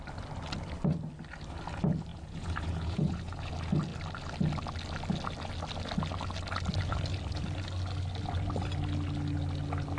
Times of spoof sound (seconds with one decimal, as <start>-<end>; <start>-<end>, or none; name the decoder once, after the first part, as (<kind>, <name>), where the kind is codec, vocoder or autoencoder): 2.1-3.5 (vocoder, Vocos)